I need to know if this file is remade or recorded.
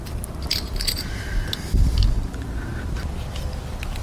recorded